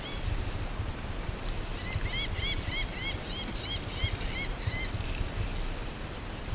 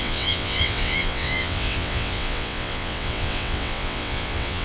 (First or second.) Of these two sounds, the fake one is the second